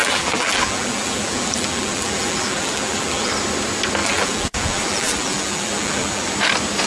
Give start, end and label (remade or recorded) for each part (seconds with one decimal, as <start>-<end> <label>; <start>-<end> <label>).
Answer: 0.0-3.3 remade; 3.3-4.0 recorded; 4.0-6.3 remade; 6.3-6.9 recorded